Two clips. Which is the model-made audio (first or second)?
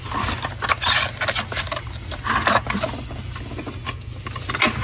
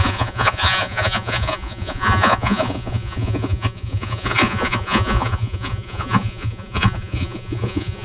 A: second